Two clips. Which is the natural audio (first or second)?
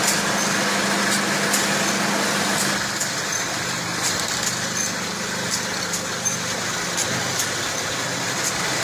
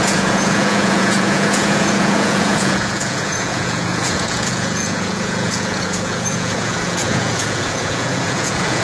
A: first